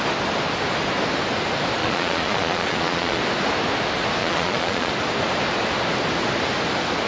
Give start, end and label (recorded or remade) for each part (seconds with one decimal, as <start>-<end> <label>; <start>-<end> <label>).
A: 0.0-1.8 recorded; 1.8-3.2 remade; 3.2-4.2 recorded; 4.2-4.9 remade; 4.9-7.1 recorded